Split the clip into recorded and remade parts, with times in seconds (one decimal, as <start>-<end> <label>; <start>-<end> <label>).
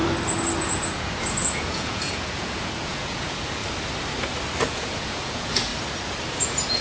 0.0-0.6 recorded; 0.6-3.6 remade; 3.6-4.6 recorded; 4.6-5.7 remade; 5.7-6.3 recorded; 6.3-6.8 remade